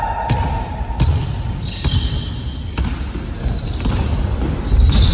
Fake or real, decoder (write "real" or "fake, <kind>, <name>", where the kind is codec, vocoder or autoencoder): real